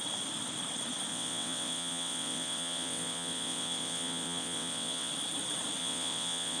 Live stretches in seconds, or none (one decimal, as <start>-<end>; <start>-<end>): 0.0-1.1; 5.1-5.8